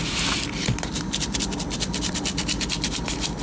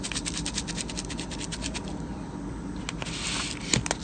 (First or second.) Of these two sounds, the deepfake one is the first